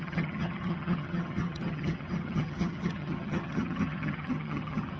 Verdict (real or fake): fake